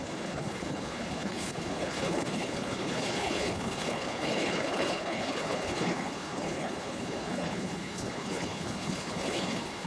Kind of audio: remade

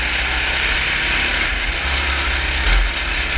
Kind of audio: recorded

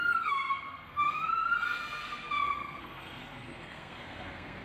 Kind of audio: remade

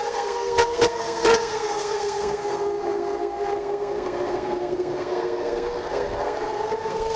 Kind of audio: remade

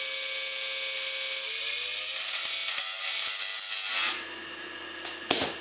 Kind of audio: recorded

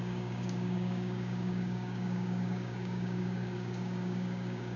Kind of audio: remade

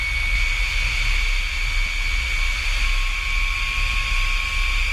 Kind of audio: recorded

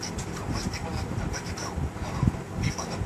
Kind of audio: recorded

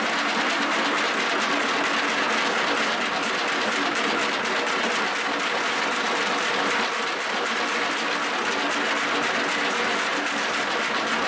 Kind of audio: recorded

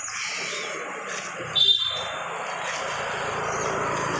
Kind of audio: recorded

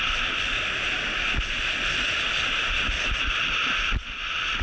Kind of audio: recorded